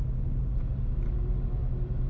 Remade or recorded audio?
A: recorded